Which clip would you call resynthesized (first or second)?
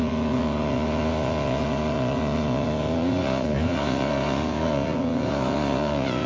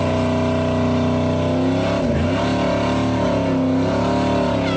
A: first